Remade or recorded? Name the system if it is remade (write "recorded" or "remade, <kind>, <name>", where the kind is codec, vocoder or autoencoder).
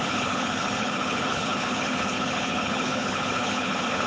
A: remade, codec, HILCodec